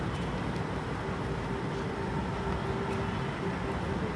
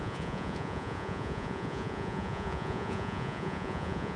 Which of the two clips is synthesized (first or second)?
second